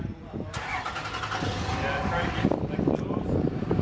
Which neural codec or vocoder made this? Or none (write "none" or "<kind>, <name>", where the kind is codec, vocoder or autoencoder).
none